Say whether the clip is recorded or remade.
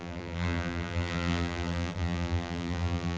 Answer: remade